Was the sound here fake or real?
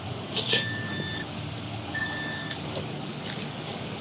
fake